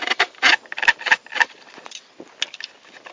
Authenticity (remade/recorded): recorded